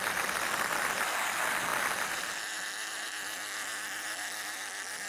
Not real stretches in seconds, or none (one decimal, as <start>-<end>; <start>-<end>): 1.7-5.1